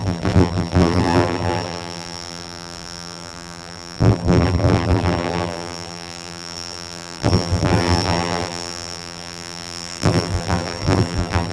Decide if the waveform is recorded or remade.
remade